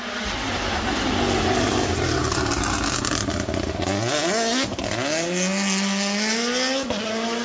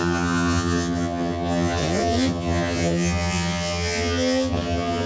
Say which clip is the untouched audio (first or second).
first